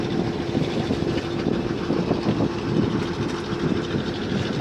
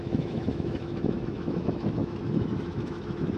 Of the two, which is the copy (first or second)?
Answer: second